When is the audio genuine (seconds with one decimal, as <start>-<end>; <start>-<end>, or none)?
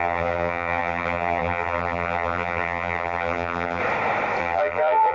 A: 3.8-4.4